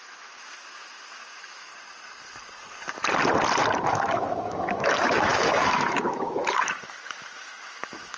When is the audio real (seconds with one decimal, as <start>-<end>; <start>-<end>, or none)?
1.7-3.9